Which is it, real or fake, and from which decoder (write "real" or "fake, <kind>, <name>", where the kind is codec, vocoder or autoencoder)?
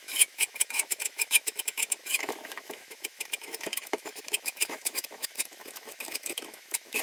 fake, autoencoder, DAC-VAE